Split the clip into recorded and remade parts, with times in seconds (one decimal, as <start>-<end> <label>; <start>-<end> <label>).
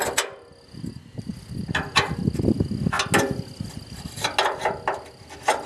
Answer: 0.0-5.7 recorded